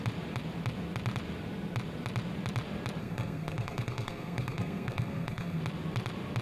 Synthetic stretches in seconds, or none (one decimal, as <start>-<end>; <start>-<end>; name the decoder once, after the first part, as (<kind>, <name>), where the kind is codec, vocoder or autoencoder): 3.0-5.6 (codec, SNAC)